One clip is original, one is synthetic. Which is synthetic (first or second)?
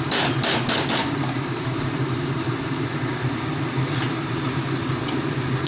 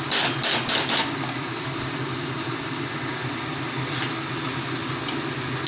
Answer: first